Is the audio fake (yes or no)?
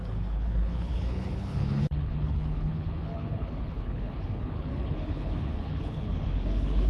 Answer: yes